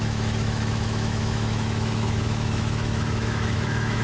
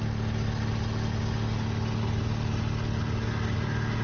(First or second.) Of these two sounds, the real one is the second